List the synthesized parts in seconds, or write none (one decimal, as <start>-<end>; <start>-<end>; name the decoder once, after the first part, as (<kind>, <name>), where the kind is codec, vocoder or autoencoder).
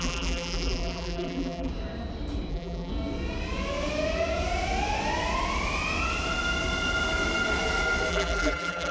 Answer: 0.0-1.7 (vocoder, BigVGAN v2); 2.5-2.9; 8.1-8.9